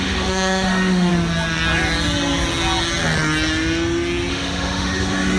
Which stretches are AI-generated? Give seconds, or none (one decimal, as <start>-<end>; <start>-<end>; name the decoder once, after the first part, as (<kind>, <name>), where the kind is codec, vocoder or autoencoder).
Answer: 0.0-1.1 (autoencoder, DAC-VAE); 4.3-5.4